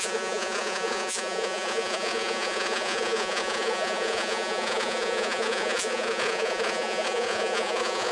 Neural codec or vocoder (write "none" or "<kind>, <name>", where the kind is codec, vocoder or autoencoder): vocoder, Vocos